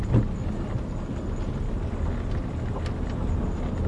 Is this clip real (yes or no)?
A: yes